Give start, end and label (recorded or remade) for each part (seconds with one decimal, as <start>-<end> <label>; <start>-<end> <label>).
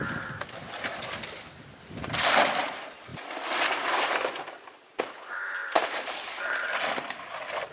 0.0-5.6 recorded; 5.6-6.7 remade; 6.7-7.7 recorded